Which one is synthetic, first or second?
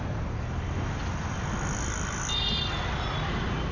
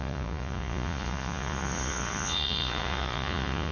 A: second